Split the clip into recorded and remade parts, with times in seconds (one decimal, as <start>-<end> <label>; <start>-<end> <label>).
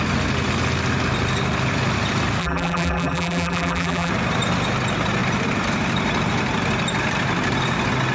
0.0-2.4 recorded; 2.4-4.1 remade; 4.1-8.1 recorded